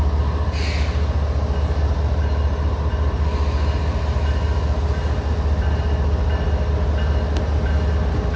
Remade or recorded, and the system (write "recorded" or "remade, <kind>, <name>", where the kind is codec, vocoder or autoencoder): recorded